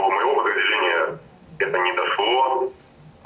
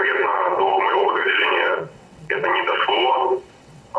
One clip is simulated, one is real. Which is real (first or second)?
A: first